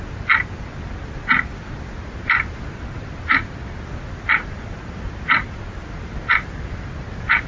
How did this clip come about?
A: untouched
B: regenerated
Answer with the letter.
A